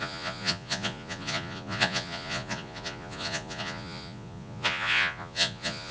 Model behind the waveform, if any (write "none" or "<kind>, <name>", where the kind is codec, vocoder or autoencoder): vocoder, Vocos